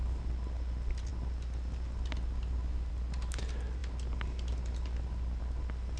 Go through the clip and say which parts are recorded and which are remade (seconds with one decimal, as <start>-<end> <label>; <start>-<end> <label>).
0.0-6.0 recorded